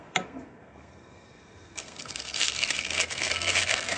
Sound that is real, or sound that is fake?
fake